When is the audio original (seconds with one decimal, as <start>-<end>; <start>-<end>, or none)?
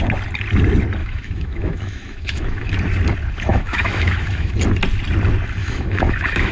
0.0-1.0; 2.7-3.5; 4.5-5.6